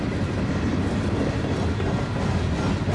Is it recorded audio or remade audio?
recorded